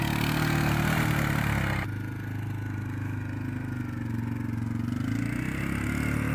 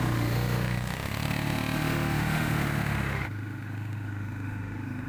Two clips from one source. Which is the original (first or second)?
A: first